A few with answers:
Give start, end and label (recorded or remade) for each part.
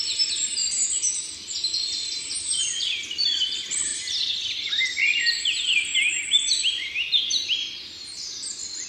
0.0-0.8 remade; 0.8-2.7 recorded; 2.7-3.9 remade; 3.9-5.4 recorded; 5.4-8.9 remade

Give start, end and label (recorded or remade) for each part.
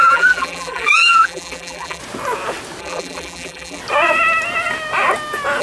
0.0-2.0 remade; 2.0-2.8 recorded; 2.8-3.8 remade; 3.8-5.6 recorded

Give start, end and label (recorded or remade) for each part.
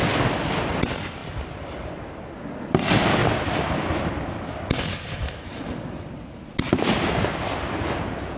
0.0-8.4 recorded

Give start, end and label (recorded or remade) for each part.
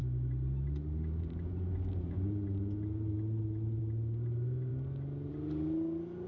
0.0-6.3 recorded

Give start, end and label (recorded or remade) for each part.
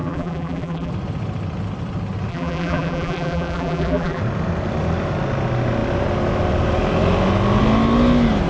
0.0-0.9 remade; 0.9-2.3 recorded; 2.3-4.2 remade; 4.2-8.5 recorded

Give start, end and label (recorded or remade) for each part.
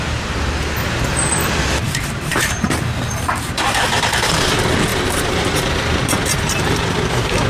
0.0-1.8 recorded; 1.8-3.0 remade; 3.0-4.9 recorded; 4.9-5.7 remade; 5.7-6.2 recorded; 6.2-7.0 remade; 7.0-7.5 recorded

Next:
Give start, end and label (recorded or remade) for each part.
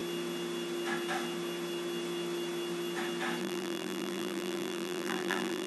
0.0-3.4 recorded; 3.4-5.7 remade